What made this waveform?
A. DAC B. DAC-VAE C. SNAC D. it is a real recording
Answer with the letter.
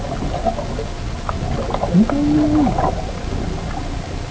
D